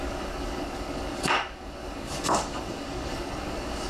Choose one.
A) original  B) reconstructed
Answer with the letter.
B